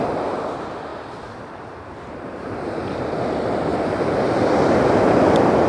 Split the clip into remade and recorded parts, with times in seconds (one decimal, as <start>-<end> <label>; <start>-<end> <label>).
0.0-0.9 recorded; 0.9-3.2 remade; 3.2-3.7 recorded; 3.7-4.3 remade; 4.3-5.7 recorded